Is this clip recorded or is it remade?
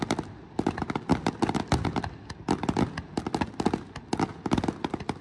recorded